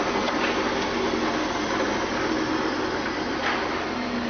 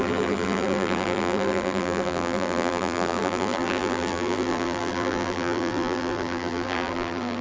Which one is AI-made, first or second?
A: second